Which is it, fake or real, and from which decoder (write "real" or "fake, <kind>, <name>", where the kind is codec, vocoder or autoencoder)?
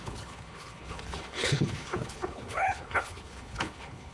fake, codec, HILCodec